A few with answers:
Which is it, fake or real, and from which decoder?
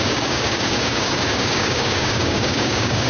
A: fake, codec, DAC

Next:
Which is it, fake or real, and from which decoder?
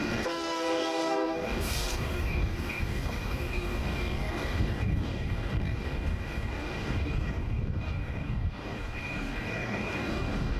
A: fake, codec, DAC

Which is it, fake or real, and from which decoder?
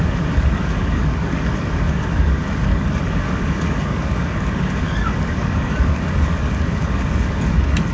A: fake, codec, DAC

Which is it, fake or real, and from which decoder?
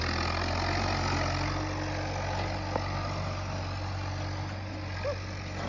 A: real